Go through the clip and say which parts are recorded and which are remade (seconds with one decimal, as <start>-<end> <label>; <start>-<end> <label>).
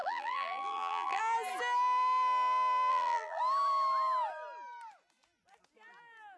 0.0-1.2 remade; 1.2-2.9 recorded; 2.9-3.4 remade; 3.4-6.4 recorded